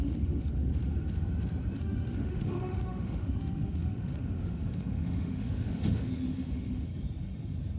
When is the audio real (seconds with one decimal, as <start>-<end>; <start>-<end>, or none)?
0.8-1.8; 6.9-7.8